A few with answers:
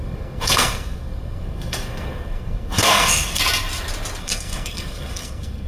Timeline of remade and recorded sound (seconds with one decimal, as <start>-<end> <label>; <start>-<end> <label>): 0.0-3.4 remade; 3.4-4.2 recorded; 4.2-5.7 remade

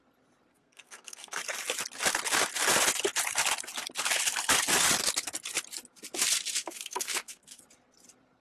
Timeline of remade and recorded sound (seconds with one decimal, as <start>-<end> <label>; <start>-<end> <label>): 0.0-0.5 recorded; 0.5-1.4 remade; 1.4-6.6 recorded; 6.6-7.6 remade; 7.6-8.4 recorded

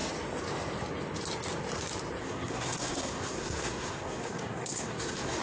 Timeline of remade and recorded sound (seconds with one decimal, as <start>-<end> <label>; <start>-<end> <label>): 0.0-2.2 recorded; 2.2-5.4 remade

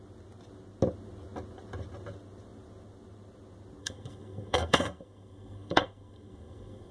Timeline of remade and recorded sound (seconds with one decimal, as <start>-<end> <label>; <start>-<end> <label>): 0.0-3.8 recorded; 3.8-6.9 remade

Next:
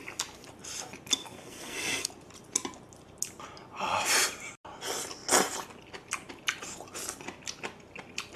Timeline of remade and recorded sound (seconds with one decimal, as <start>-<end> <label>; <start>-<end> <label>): 0.0-1.2 recorded; 1.2-2.1 remade; 2.1-8.4 recorded

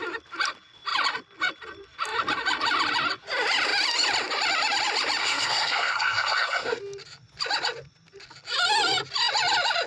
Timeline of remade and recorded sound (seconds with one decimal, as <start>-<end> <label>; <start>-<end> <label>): 0.0-5.2 recorded; 5.2-6.8 remade; 6.8-9.9 recorded

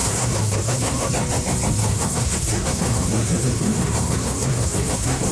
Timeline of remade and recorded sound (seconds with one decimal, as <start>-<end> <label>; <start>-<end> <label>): 0.0-1.1 remade; 1.1-1.8 recorded; 1.8-5.3 remade